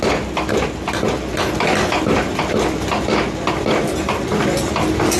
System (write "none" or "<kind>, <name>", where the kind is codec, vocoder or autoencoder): none